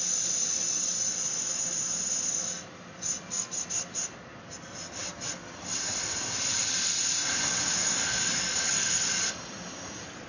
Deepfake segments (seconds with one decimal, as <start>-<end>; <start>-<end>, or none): 7.8-9.0